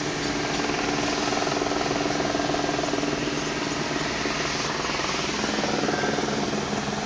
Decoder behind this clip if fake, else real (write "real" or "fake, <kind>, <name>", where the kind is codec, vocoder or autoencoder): real